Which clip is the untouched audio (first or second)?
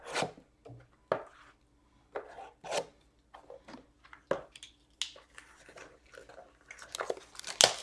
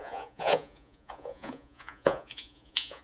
first